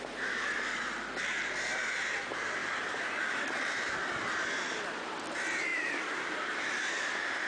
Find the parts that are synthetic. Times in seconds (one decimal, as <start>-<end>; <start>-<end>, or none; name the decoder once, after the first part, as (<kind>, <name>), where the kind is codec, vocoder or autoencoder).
5.7-6.6 (vocoder, BigVGAN v2)